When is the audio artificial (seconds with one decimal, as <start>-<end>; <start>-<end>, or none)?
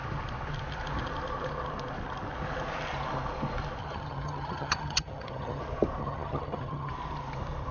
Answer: 3.8-5.6; 6.0-6.9